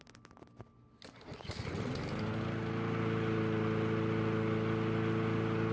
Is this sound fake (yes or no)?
no